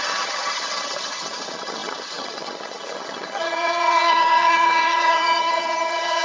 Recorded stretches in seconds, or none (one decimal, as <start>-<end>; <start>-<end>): none